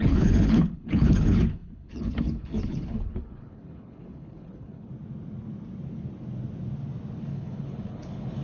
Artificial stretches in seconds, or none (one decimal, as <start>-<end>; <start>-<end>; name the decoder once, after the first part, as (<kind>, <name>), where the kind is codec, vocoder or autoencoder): 0.0-4.9 (codec, HILCodec); 7.2-8.4